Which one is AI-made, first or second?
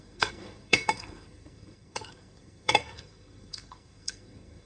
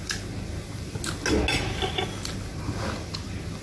first